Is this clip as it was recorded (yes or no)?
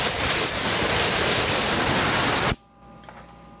yes